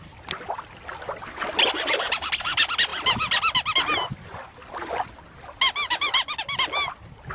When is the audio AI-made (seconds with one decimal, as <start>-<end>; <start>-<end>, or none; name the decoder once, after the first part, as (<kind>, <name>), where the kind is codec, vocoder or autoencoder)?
none